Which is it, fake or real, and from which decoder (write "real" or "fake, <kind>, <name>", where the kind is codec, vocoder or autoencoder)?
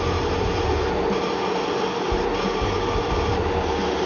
real